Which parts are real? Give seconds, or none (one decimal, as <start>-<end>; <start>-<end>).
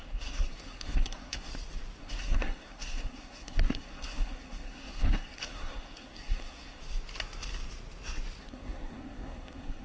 1.5-2.0; 6.8-8.4